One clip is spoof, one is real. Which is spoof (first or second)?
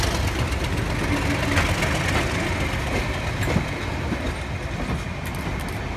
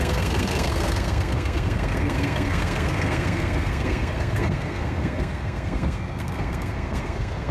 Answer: second